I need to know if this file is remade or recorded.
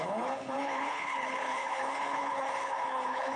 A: remade